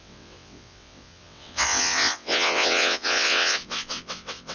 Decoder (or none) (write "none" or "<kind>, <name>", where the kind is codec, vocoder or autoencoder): vocoder, WaveNeXt